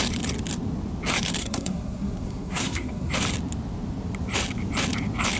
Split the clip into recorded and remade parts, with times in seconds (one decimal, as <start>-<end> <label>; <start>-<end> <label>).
0.0-1.4 recorded; 1.4-3.1 remade; 3.1-5.4 recorded